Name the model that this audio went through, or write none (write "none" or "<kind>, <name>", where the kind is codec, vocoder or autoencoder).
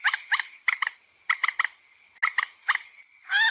none